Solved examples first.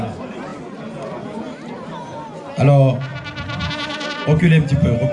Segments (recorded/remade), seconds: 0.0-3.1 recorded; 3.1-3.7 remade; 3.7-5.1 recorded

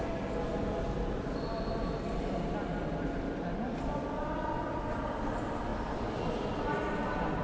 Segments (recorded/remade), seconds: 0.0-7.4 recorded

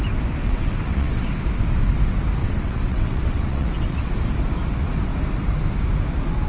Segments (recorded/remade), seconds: 0.0-0.4 recorded; 0.4-1.3 remade; 1.3-2.4 recorded; 2.4-4.1 remade; 4.1-6.5 recorded